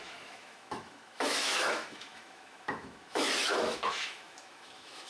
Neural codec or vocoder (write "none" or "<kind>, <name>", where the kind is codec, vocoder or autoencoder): autoencoder, DAC-VAE